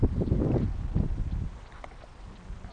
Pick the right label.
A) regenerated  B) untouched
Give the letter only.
B